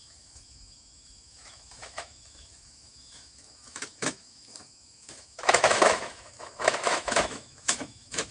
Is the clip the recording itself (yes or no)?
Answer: no